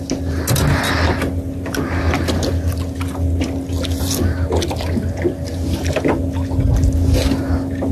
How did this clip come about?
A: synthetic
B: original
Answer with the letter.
B